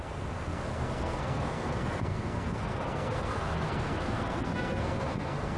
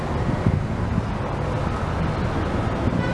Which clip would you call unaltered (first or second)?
second